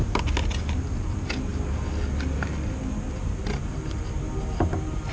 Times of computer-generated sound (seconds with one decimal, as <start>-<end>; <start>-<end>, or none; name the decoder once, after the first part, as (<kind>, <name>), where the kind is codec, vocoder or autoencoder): none